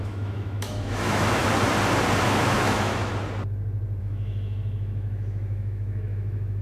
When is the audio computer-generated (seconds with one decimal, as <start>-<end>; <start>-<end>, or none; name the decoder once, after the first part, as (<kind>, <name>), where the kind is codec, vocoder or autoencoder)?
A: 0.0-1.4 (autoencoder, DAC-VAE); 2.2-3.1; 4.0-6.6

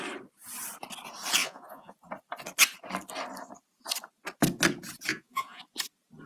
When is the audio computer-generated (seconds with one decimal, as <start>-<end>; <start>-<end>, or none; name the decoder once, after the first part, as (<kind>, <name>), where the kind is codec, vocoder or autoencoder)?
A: 1.4-1.9 (vocoder, Vocos); 5.1-5.6

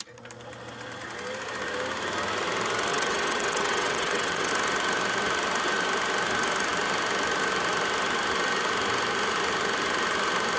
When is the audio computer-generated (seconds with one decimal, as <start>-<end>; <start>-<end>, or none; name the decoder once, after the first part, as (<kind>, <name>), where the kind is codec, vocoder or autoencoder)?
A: 2.9-4.5 (vocoder, WaveNeXt)

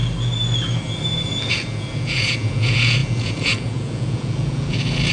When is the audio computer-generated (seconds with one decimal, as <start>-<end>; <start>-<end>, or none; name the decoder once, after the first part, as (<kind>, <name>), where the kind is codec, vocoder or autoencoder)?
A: 1.5-5.1 (vocoder, Vocos)